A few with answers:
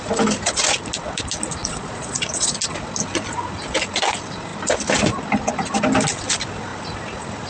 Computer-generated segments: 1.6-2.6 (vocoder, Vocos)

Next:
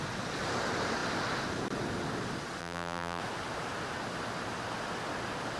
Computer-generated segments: 2.6-3.2 (vocoder, BigVGAN v2)

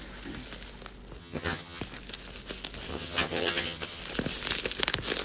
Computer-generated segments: 1.2-1.8 (vocoder, HiFi-GAN); 2.9-4.0

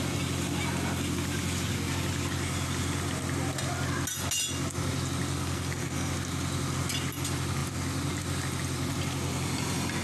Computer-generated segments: 5.3-6.1 (codec, SNAC)

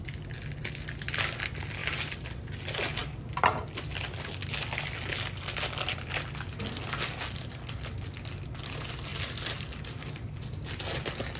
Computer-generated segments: none